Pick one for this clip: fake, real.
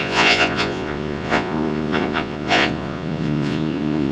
fake